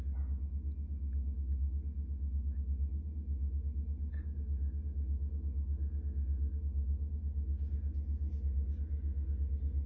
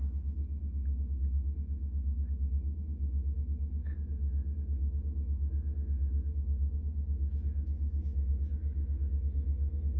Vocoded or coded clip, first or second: second